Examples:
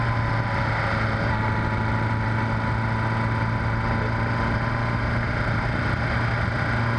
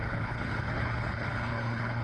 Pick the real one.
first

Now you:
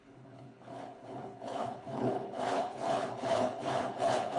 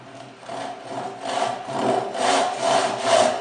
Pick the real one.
second